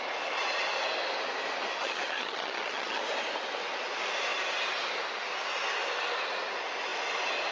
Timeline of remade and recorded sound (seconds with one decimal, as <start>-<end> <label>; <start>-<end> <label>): 0.0-1.8 recorded; 1.8-3.0 remade; 3.0-7.5 recorded